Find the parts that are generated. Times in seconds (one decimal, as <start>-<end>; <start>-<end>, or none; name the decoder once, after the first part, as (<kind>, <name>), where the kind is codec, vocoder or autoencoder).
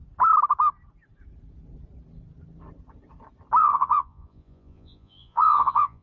3.6-6.0 (vocoder, Vocos)